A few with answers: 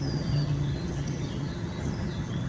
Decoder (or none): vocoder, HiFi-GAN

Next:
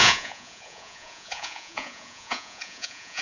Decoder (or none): vocoder, Vocos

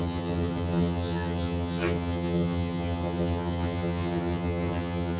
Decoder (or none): vocoder, HiFi-GAN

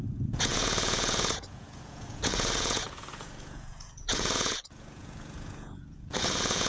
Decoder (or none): vocoder, Vocos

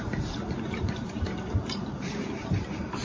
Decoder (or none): vocoder, BigVGAN v2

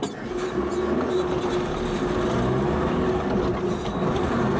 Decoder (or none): none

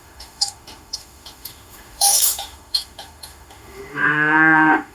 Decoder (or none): autoencoder, DAC-VAE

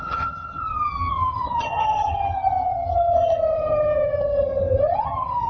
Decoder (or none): vocoder, HiFi-GAN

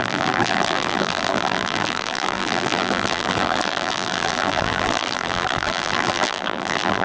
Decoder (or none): vocoder, BigVGAN v2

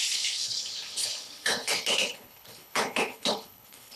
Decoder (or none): codec, HILCodec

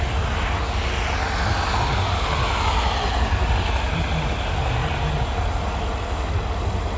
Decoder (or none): none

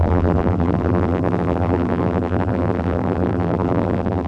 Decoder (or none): vocoder, BigVGAN v2